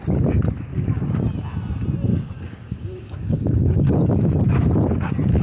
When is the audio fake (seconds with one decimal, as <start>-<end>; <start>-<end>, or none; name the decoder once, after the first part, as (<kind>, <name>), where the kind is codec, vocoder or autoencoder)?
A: 0.7-1.2 (codec, DAC); 2.1-3.9